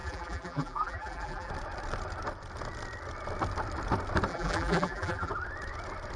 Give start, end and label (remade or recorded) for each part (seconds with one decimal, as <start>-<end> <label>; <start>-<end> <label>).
0.0-1.5 remade; 1.5-4.3 recorded; 4.3-5.3 remade; 5.3-6.2 recorded